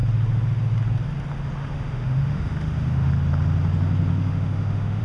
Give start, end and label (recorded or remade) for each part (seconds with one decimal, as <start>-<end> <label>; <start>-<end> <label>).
0.0-1.6 recorded; 1.6-3.1 remade; 3.1-4.1 recorded; 4.1-5.0 remade